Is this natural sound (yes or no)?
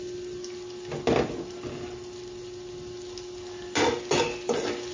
yes